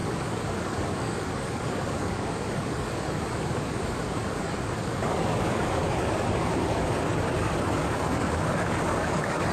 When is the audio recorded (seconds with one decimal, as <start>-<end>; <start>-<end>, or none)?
none